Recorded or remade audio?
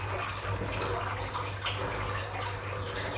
recorded